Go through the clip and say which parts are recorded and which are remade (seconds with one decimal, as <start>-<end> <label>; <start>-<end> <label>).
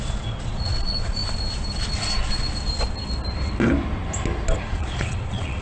0.0-1.2 remade; 1.2-4.6 recorded; 4.6-5.6 remade